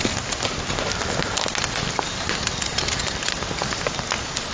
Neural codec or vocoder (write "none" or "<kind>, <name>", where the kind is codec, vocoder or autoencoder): none